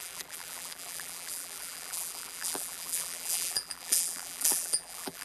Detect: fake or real fake